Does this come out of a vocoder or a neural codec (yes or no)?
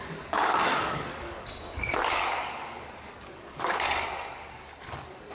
yes